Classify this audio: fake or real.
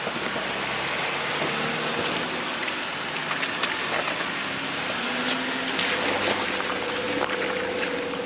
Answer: real